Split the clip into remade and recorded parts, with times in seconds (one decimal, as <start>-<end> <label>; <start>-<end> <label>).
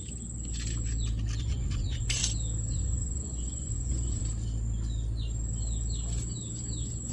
0.0-1.4 recorded; 1.4-2.2 remade; 2.2-2.7 recorded; 2.7-4.2 remade; 4.2-7.1 recorded